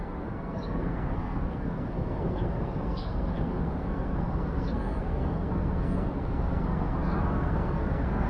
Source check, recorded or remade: remade